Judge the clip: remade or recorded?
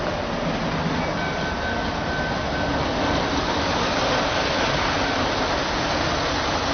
recorded